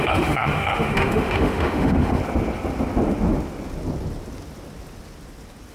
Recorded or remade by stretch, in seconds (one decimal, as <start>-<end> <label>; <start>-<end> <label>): 0.0-2.2 remade; 2.2-5.7 recorded